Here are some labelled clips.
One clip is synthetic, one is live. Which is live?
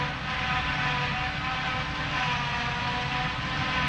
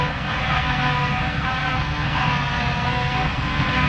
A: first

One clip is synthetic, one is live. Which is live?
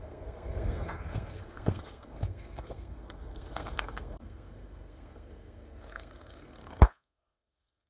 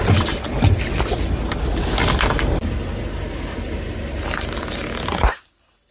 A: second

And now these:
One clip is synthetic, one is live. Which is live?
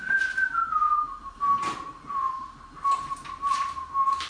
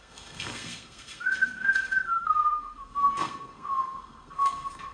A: first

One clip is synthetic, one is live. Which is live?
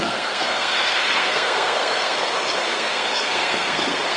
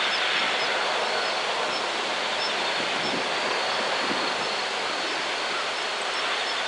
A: second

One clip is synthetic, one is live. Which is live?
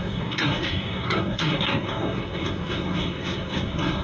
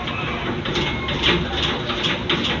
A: second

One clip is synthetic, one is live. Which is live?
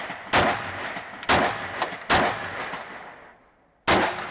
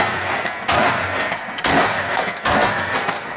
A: first